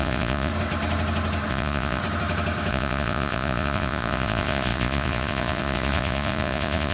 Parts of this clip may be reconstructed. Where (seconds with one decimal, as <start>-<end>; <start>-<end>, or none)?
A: 0.0-0.5; 1.5-2.0; 2.7-6.9